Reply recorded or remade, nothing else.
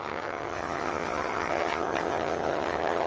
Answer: remade